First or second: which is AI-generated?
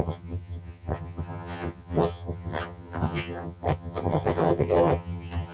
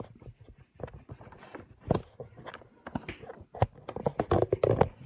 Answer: first